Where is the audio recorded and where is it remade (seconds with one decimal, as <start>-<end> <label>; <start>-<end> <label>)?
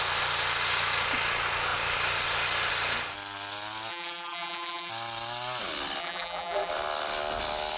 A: 0.0-3.9 recorded; 3.9-4.9 remade; 4.9-6.0 recorded; 6.0-6.7 remade; 6.7-7.8 recorded